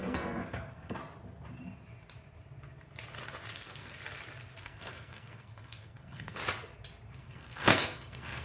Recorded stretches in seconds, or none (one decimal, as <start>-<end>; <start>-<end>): 1.0-3.5; 4.0-4.6; 6.4-7.1